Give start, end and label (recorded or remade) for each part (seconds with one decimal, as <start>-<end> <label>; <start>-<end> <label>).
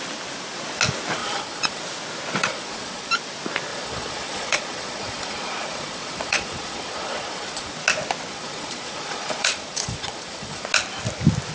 0.0-1.2 recorded; 1.2-1.8 remade; 1.8-2.4 recorded; 2.4-3.1 remade; 3.1-3.7 recorded; 3.7-7.7 remade; 7.7-8.3 recorded; 8.3-10.7 remade; 10.7-11.5 recorded